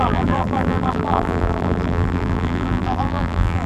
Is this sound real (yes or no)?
no